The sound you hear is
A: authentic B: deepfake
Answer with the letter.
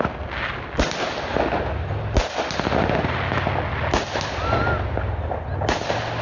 A